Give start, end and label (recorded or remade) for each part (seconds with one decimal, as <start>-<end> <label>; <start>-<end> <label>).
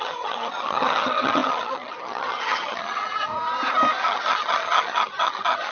0.0-3.3 remade; 3.3-4.0 recorded; 4.0-5.7 remade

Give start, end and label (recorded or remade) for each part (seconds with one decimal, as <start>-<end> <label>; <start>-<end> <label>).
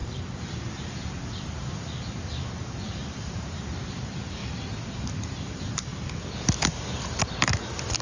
0.0-4.4 remade; 4.4-5.2 recorded; 5.2-5.9 remade; 5.9-7.3 recorded; 7.3-8.0 remade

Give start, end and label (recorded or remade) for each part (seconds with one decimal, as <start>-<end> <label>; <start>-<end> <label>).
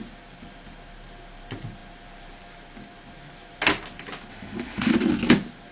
0.0-4.3 recorded; 4.3-4.9 remade; 4.9-5.7 recorded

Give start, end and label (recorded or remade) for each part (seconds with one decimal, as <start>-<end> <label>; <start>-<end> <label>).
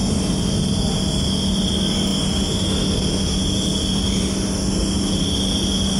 0.0-0.5 remade; 0.5-6.0 recorded